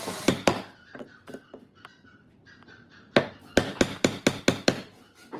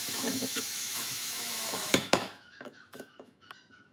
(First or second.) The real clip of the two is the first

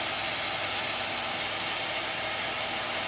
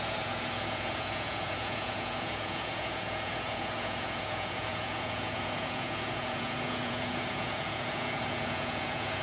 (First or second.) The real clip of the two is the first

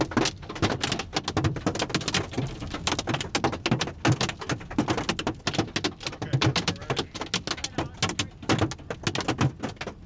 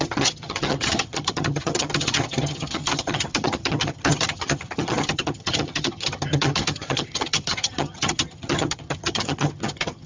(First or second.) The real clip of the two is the first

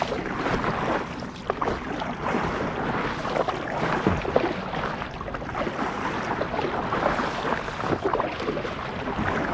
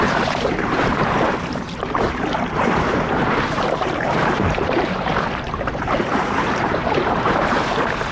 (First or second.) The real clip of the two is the first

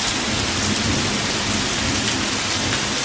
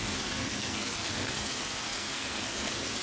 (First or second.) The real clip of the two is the first